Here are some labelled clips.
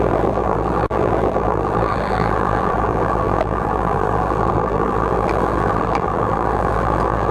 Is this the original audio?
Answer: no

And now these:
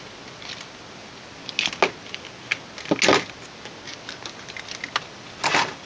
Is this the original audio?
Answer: yes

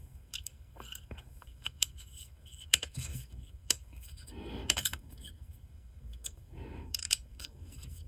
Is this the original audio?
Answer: no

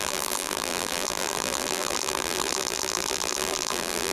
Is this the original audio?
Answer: no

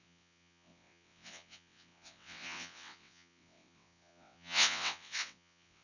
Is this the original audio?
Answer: no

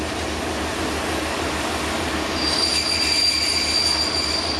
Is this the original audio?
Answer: yes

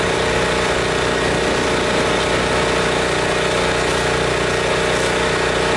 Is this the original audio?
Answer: yes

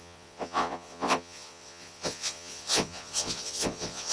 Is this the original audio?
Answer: no